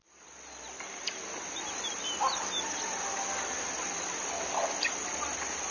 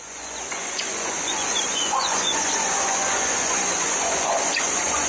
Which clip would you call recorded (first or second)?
first